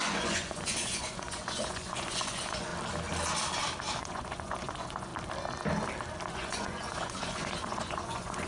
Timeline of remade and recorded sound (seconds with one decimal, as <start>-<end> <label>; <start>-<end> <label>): 0.0-2.7 remade; 2.7-4.0 recorded; 4.0-5.1 remade; 5.1-6.3 recorded; 6.3-8.5 remade